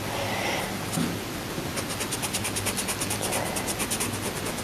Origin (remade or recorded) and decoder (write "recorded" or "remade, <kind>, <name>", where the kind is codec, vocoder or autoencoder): recorded